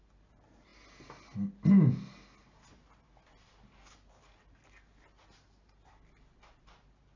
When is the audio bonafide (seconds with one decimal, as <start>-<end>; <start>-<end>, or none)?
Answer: 0.0-7.2